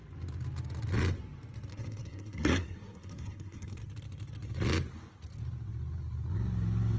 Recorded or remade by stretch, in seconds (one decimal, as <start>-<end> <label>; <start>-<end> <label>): 0.0-1.7 recorded; 1.7-3.8 remade; 3.8-7.0 recorded